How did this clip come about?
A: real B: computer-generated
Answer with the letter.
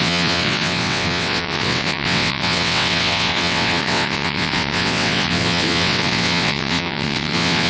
B